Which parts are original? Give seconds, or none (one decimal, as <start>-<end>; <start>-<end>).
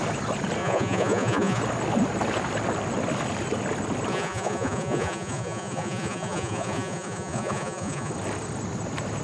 0.0-0.6; 1.6-4.1; 8.1-9.2